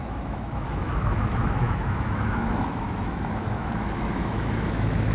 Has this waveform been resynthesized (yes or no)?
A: yes